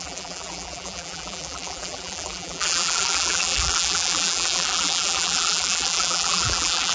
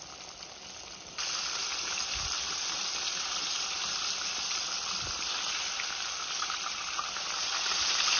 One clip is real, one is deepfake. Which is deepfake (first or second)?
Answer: first